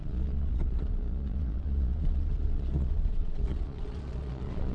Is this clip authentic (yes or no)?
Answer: no